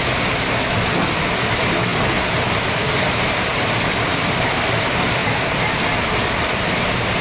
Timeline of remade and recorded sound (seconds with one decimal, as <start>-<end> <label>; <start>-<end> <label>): 0.0-1.9 recorded; 1.9-3.3 remade; 3.3-7.2 recorded